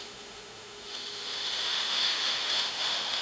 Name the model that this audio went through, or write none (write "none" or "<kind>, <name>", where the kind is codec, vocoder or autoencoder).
autoencoder, DAC-VAE